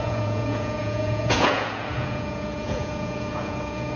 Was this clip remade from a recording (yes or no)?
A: yes